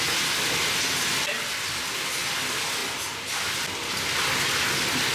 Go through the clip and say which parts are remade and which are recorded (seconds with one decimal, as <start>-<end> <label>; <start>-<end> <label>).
0.0-5.1 recorded